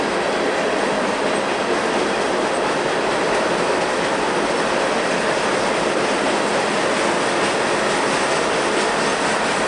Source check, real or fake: real